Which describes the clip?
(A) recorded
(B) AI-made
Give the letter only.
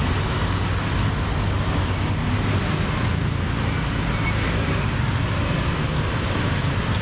A